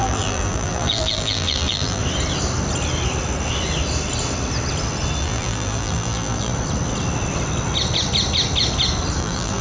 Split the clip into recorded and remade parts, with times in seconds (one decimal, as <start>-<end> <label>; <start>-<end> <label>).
0.0-2.0 remade; 2.0-5.2 recorded; 5.2-6.5 remade; 6.5-9.2 recorded; 9.2-9.6 remade